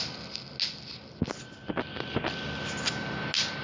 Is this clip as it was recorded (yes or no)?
yes